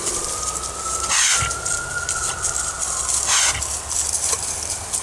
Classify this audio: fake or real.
real